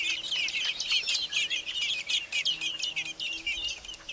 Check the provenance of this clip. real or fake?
real